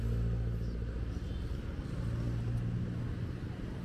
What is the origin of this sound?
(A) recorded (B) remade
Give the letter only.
A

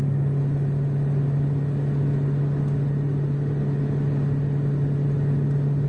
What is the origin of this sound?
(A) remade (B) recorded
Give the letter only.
B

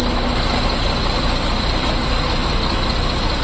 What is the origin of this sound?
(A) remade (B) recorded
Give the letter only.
B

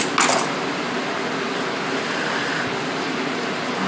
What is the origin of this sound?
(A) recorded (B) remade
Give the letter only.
A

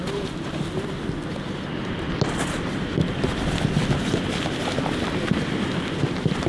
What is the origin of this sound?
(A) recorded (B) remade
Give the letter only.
A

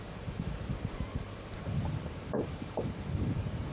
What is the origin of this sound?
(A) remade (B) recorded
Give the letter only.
A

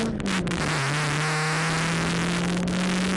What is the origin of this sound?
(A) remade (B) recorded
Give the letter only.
B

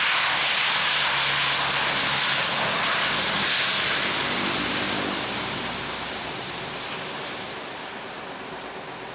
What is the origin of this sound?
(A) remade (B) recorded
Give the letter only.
B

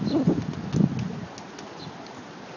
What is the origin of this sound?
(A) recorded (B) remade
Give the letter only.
A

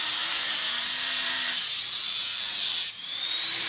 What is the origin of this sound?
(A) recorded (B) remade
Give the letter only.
B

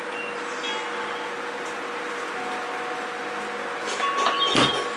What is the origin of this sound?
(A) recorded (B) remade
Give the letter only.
A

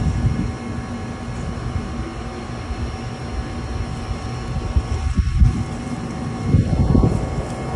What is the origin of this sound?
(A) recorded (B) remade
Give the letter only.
A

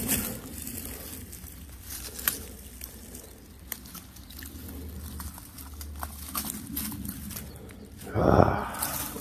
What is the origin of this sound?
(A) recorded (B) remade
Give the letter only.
A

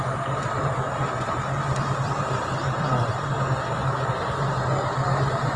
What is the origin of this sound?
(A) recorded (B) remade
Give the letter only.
B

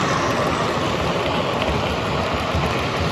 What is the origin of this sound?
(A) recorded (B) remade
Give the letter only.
A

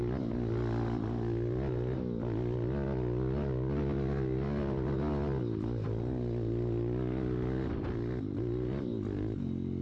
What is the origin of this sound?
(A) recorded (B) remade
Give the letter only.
A